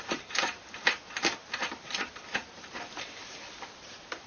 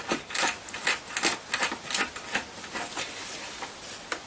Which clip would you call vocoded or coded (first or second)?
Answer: first